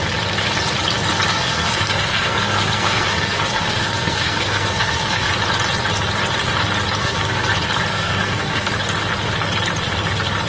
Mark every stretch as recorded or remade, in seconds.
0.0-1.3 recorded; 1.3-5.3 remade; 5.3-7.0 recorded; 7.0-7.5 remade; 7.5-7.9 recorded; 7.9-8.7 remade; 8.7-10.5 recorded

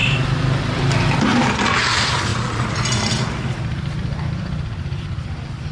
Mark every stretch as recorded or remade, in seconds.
0.0-2.3 recorded; 2.3-5.7 remade